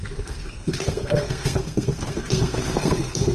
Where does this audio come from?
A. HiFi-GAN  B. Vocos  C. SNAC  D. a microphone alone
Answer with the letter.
C